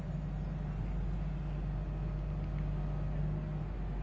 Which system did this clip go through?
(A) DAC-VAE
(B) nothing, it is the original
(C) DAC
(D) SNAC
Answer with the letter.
B